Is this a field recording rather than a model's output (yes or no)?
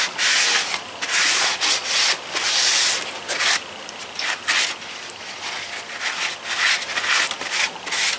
yes